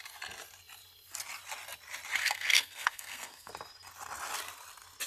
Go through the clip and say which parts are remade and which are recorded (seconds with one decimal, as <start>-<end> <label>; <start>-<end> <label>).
0.0-2.2 recorded; 2.2-3.5 remade; 3.5-5.1 recorded